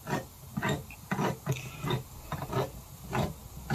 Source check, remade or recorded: recorded